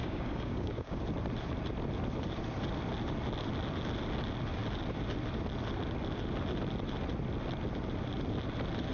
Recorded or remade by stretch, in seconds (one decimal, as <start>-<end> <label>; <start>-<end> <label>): 0.0-1.0 remade; 1.0-8.9 recorded